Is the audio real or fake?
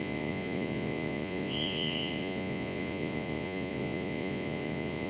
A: fake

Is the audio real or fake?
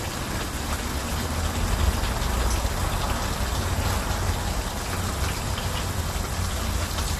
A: real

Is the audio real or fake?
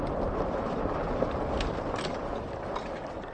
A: real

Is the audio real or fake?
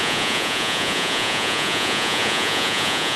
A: fake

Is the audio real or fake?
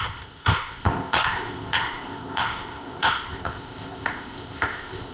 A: fake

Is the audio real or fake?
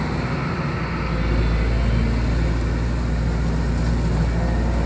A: real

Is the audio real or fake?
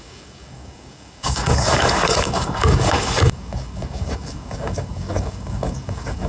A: fake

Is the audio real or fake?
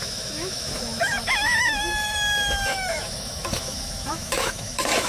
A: fake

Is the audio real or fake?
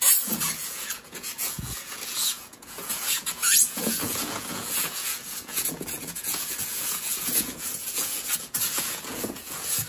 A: fake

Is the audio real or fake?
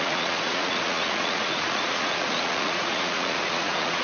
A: fake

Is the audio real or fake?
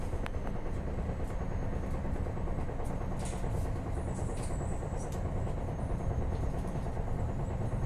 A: real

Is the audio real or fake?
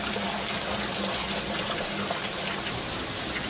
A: real